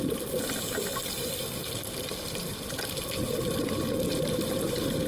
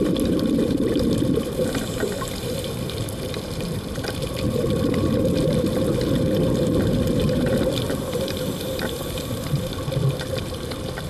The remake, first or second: second